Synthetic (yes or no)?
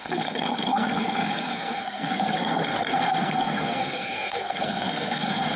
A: yes